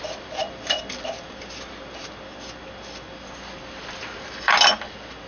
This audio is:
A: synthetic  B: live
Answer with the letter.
B